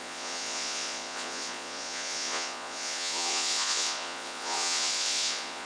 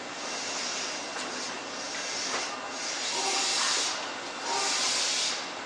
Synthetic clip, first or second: first